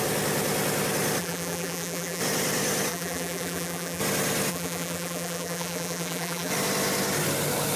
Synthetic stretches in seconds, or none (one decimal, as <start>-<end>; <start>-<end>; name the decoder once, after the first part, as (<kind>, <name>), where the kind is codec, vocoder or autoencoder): 1.2-2.2 (vocoder, BigVGAN v2); 2.9-4.0; 4.5-6.5